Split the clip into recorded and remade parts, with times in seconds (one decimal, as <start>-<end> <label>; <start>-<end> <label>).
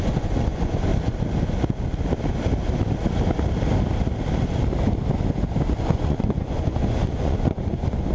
0.0-0.9 remade; 0.9-5.8 recorded; 5.8-8.1 remade